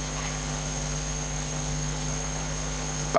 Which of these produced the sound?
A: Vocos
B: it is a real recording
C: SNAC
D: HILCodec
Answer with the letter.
D